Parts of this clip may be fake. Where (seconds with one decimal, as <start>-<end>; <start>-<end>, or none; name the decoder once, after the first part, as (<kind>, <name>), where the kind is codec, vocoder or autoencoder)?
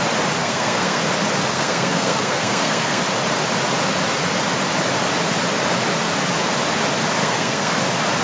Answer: 0.4-1.0 (codec, SNAC); 1.5-3.0; 7.2-7.7